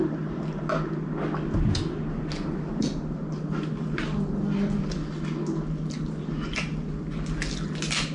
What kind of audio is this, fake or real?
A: real